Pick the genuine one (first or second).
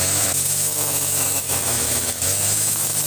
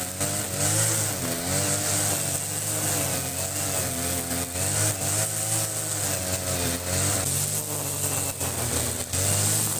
second